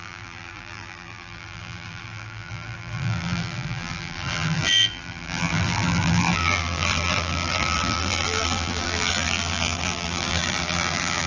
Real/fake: fake